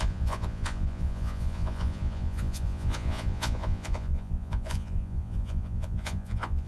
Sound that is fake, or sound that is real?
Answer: fake